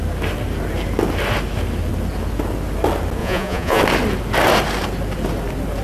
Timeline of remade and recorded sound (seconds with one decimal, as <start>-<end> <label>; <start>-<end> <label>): 0.0-3.2 recorded; 3.2-3.8 remade; 3.8-5.8 recorded